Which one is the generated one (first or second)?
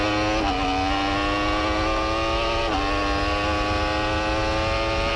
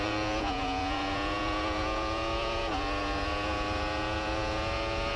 second